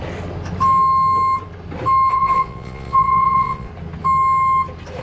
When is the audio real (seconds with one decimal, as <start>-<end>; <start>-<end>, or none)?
0.0-2.1; 3.7-5.0